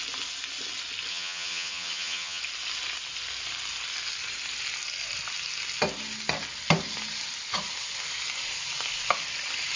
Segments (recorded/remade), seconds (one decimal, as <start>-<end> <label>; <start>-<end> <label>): 0.0-1.1 recorded; 1.1-2.4 remade; 2.4-9.8 recorded

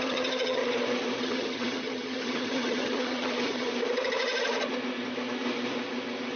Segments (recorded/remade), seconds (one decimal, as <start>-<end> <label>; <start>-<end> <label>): 0.0-0.6 remade; 0.6-1.2 recorded; 1.2-3.7 remade; 3.7-6.4 recorded

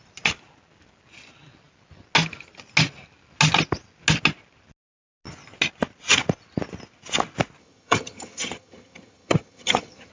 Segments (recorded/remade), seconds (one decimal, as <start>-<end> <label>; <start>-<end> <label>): 0.0-7.6 recorded; 7.6-10.1 remade

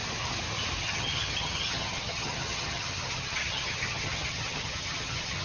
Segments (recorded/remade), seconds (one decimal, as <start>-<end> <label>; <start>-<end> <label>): 0.0-0.8 recorded; 0.8-5.4 remade

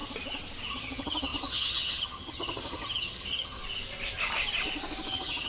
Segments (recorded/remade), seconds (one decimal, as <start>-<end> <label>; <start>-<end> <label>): 0.0-0.7 recorded; 0.7-3.6 remade; 3.6-5.1 recorded; 5.1-5.5 remade

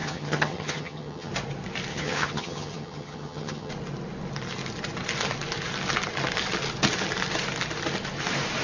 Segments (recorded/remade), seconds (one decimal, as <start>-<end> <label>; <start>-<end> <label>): 0.0-1.3 remade; 1.3-1.9 recorded; 1.9-3.7 remade; 3.7-8.6 recorded